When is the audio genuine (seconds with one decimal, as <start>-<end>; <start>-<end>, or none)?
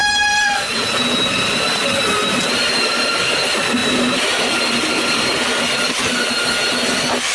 0.0-3.8; 4.6-7.3